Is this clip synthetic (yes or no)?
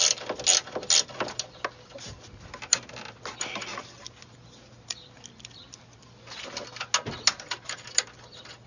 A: no